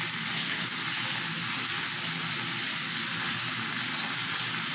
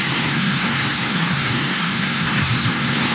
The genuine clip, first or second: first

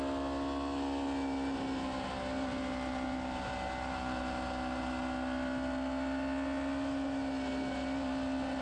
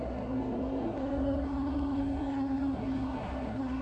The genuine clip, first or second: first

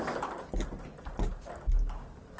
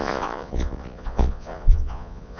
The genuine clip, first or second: first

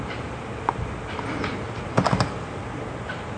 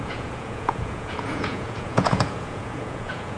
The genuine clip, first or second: first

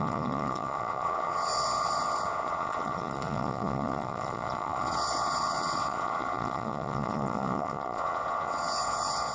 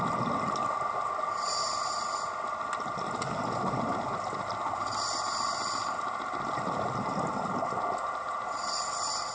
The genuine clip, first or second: second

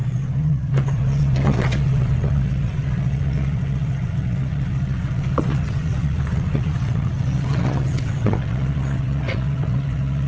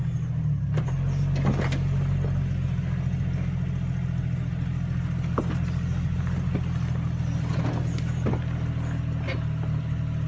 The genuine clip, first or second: second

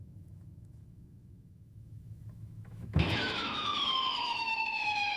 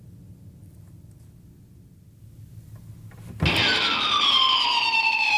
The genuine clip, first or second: second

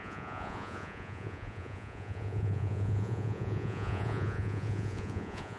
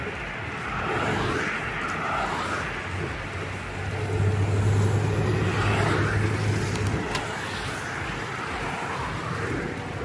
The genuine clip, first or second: second